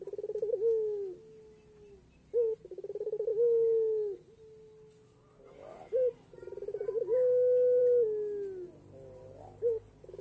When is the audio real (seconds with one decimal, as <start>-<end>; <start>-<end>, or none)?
0.0-10.2